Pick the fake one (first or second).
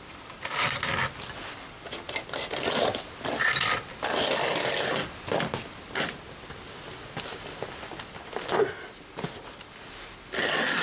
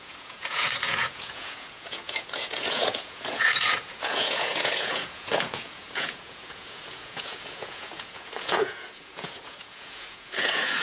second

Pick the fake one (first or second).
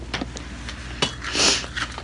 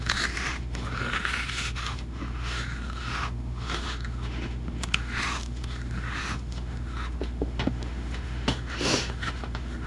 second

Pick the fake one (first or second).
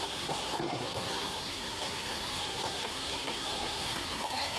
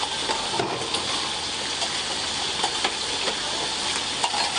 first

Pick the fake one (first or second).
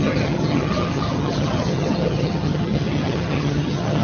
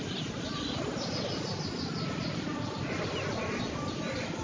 first